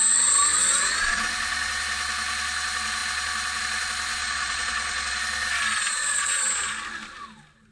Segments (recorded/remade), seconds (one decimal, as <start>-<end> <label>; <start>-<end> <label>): 0.0-0.5 recorded; 0.5-1.2 remade; 1.2-4.2 recorded; 4.2-5.2 remade; 5.2-5.9 recorded; 5.9-6.5 remade; 6.5-7.7 recorded